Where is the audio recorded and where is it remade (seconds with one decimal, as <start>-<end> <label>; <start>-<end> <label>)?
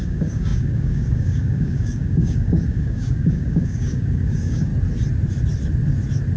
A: 0.0-4.7 remade; 4.7-6.4 recorded